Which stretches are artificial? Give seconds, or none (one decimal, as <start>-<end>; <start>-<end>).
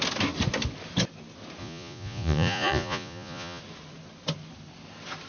1.6-3.6